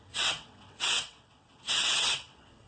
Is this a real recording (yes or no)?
no